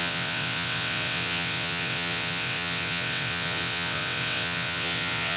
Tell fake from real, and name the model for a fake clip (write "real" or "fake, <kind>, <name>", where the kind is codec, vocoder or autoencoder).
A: fake, vocoder, WaveNeXt